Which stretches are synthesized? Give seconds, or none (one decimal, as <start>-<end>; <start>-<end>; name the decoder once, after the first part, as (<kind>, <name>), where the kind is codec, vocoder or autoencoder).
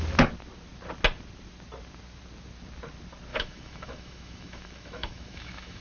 3.3-5.8 (autoencoder, DAC-VAE)